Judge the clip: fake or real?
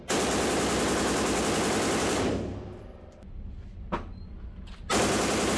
fake